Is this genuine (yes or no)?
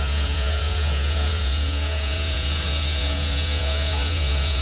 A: no